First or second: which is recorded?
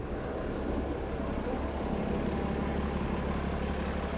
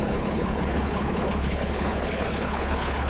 first